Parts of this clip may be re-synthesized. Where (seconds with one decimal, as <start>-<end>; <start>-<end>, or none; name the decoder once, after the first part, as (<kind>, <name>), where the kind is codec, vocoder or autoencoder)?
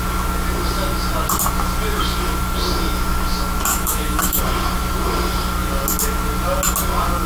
3.7-4.4 (autoencoder, DAC-VAE)